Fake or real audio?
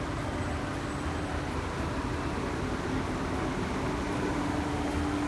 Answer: real